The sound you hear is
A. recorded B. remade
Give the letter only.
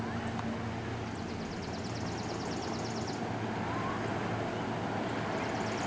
A